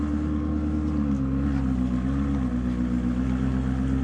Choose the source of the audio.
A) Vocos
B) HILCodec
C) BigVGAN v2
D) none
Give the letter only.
D